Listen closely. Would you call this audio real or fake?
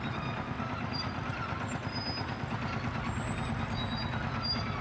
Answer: real